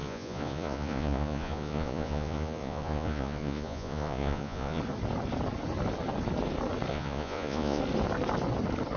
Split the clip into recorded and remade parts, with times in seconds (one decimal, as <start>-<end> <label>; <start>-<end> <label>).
0.0-4.8 remade; 4.8-6.9 recorded; 6.9-7.8 remade; 7.8-9.0 recorded